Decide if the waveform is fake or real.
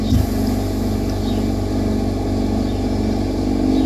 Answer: real